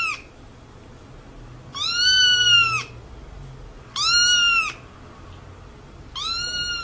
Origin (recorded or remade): recorded